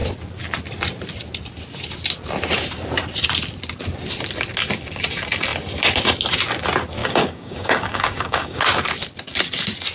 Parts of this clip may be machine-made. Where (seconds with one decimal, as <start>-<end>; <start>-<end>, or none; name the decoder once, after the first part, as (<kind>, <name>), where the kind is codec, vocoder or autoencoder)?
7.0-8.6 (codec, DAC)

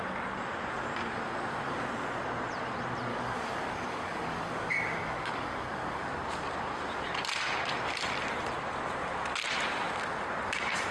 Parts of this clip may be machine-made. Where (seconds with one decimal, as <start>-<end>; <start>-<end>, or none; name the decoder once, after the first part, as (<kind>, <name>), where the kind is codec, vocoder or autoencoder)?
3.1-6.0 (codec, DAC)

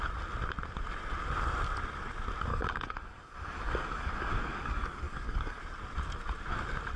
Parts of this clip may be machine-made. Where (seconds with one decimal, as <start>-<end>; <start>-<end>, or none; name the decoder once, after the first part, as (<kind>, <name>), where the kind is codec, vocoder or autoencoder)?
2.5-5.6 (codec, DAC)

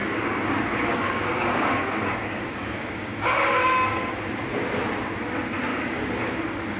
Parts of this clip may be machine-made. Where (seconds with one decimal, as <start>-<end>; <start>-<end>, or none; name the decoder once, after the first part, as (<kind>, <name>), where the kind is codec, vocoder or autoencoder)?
0.0-4.1 (codec, DAC); 5.7-6.3

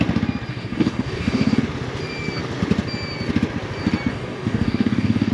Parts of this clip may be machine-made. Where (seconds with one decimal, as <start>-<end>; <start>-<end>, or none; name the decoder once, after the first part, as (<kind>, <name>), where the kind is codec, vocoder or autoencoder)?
0.5-1.6 (codec, DAC); 4.1-5.3

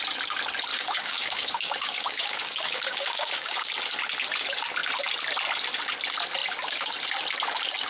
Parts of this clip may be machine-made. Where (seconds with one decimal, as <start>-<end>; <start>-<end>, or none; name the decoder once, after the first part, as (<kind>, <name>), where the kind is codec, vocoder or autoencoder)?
0.7-3.7 (codec, DAC)